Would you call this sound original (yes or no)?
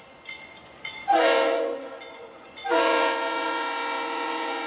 no